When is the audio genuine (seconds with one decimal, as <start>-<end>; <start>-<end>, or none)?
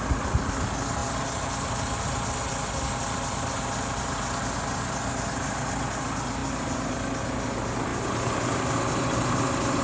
0.0-9.8